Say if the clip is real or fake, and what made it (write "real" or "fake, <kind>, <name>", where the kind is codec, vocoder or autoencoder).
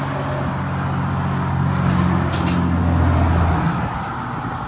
real